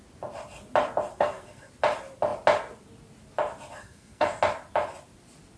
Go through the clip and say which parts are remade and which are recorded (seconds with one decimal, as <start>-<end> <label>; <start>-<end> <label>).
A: 0.0-1.1 recorded; 1.1-1.7 remade; 1.7-3.8 recorded; 3.8-4.4 remade; 4.4-5.6 recorded